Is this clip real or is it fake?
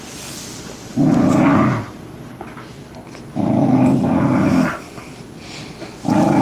real